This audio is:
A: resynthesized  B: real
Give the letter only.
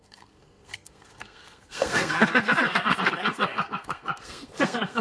A